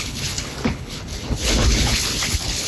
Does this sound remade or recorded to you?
remade